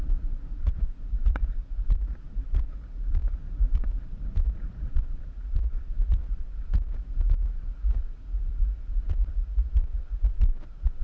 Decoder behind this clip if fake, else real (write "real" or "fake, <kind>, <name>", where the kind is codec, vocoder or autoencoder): fake, vocoder, Vocos